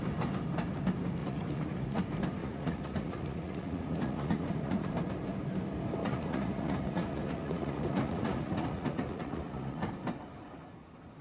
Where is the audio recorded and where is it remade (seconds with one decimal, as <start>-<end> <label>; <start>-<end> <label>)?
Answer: 0.0-1.2 recorded; 1.2-2.0 remade; 2.0-2.4 recorded; 2.4-4.9 remade; 4.9-6.0 recorded; 6.0-9.9 remade; 9.9-11.2 recorded